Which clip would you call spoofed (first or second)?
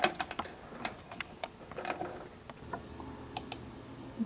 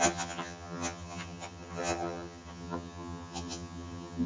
second